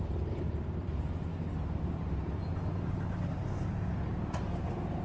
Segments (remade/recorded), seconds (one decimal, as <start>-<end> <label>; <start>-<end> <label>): 0.0-1.3 remade; 1.3-1.8 recorded; 1.8-2.5 remade; 2.5-4.4 recorded; 4.4-5.0 remade